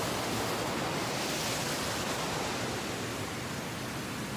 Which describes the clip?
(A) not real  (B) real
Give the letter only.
B